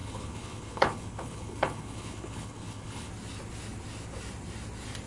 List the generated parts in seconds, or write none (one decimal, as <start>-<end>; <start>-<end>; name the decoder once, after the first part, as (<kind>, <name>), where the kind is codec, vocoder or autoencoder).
0.0-3.1 (codec, HILCodec)